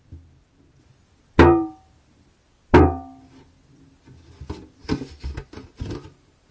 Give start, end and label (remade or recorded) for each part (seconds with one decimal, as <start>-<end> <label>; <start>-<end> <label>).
0.0-6.5 recorded